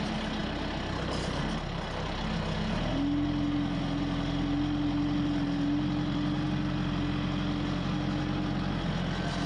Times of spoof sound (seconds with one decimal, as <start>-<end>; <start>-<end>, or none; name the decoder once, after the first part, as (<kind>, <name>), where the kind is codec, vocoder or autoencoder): none